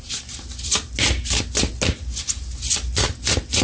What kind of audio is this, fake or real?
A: real